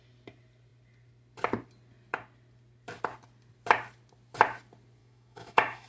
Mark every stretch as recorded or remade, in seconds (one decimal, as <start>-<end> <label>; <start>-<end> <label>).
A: 0.0-5.0 recorded; 5.0-5.9 remade